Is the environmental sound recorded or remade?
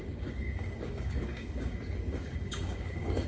remade